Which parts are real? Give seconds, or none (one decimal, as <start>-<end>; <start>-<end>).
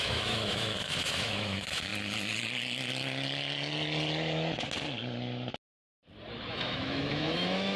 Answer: 1.9-6.5